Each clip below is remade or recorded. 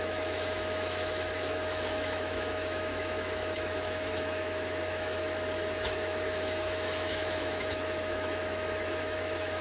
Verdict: remade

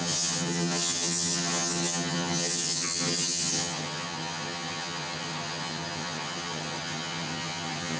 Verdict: remade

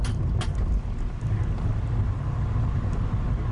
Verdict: recorded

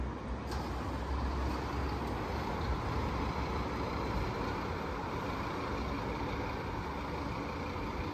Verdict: recorded